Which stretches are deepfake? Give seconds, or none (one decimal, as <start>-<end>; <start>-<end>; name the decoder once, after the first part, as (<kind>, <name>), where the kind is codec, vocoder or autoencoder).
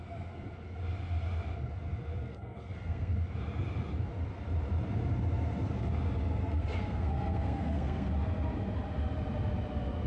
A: 2.2-3.1 (codec, SNAC); 6.4-8.1